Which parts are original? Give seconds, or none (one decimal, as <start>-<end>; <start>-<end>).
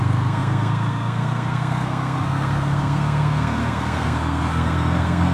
none